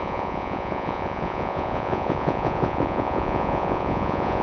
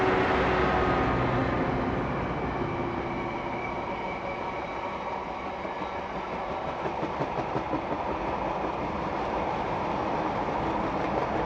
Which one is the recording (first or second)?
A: second